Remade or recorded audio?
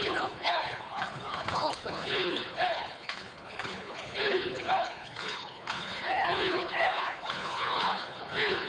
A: remade